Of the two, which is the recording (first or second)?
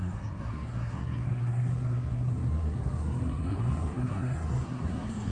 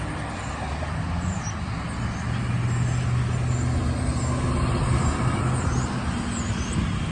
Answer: second